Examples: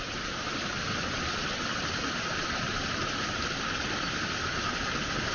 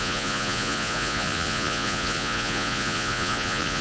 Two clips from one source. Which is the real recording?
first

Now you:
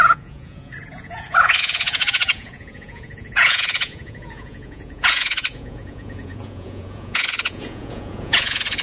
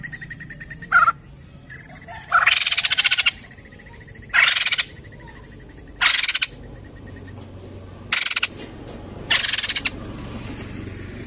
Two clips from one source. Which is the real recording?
second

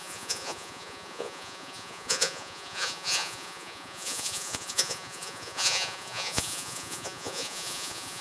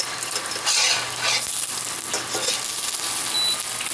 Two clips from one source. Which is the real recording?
second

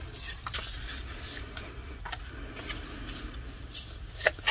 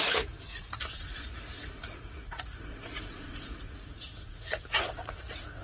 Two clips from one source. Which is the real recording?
first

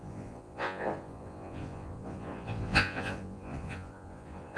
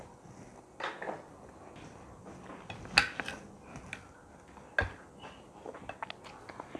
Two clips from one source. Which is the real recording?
second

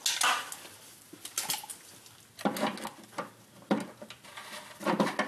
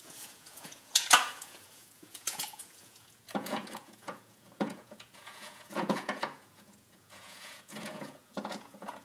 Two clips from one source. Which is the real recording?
first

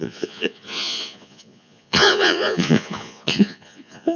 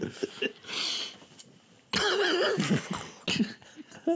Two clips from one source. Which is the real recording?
second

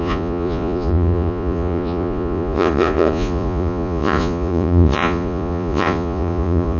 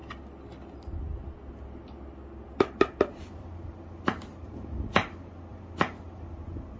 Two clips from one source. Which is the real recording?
second